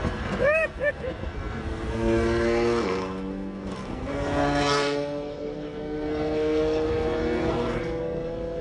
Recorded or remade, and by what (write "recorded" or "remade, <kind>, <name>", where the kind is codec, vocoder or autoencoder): remade, codec, SNAC